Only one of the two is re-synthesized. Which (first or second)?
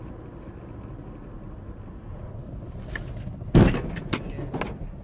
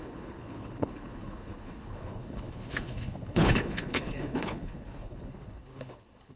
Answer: second